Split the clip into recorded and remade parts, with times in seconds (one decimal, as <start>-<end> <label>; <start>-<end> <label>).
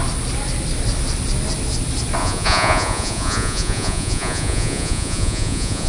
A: 0.0-2.2 recorded; 2.2-5.9 remade